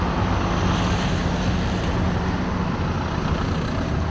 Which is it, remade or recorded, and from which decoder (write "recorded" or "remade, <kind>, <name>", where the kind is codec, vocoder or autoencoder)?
recorded